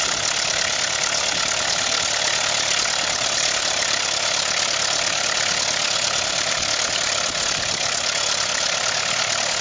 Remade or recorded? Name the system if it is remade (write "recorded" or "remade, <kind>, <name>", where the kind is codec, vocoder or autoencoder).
recorded